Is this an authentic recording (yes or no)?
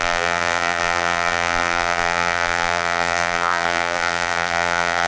no